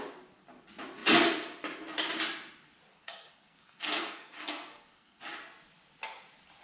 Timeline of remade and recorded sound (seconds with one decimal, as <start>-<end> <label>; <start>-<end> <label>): 0.0-2.9 recorded; 2.9-5.2 remade; 5.2-6.6 recorded